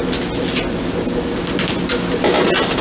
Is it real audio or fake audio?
real